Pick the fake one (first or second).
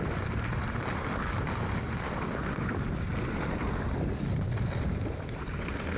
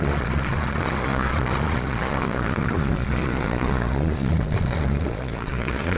second